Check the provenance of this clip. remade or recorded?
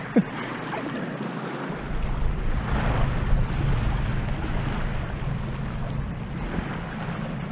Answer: recorded